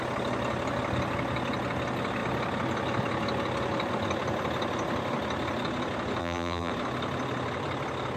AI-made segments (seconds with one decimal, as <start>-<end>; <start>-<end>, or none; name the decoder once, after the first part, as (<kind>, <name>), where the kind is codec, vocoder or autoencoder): 6.2-6.7 (vocoder, BigVGAN v2)